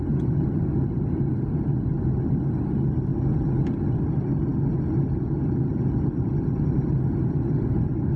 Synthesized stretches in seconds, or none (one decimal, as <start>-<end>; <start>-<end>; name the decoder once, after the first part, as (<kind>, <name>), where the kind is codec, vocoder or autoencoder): none